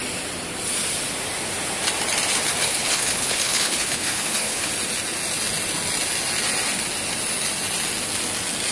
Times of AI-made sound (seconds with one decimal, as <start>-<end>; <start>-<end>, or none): 2.6-4.7

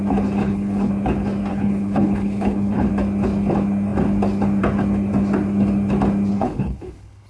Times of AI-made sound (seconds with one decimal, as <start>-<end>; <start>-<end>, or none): 0.4-0.9; 1.5-2.9; 6.3-7.3

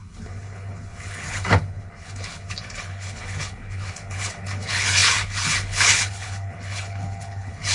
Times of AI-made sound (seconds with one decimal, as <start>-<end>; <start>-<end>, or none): 0.0-7.7

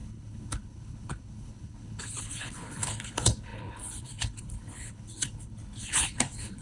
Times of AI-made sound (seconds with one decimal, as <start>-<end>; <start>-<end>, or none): 0.0-6.6